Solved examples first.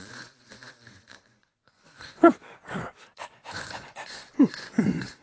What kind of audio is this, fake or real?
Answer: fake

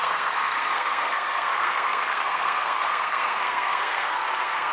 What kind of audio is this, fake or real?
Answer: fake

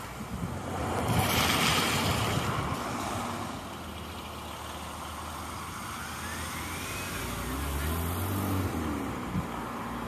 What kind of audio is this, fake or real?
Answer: real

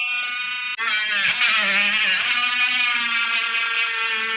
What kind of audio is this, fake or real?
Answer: real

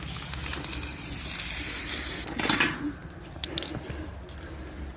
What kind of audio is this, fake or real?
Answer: real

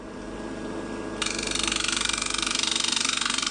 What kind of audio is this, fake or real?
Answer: real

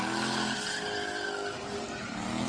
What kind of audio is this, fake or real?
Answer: real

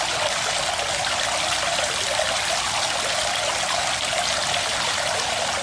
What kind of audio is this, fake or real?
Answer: real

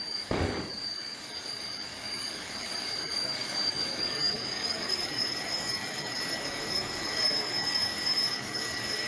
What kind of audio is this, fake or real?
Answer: fake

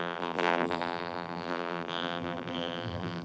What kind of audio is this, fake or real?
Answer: fake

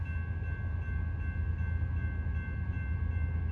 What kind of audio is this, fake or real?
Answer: real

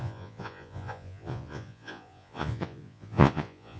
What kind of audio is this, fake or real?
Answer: fake